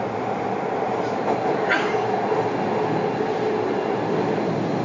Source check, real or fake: real